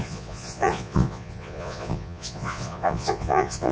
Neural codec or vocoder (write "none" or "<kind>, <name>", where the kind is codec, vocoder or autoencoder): vocoder, Vocos